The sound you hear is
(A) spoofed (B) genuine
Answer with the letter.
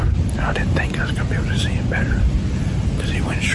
B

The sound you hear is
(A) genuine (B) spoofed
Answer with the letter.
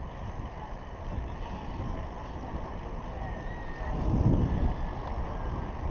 A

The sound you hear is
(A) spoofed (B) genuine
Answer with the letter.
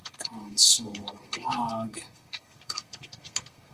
A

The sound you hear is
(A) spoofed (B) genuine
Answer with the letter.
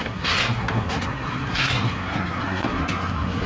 A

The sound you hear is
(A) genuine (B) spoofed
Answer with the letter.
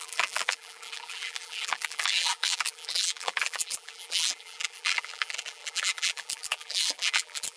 B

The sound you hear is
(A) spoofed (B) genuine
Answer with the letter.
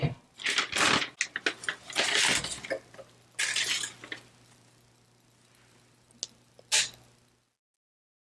B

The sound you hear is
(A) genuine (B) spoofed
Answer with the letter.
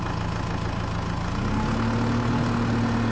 A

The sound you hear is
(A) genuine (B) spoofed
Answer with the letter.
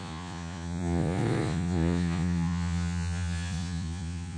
B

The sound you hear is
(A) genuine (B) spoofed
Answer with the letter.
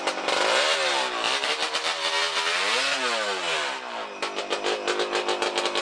A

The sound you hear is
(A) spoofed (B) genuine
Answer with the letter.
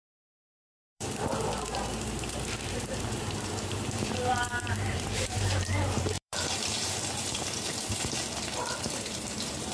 A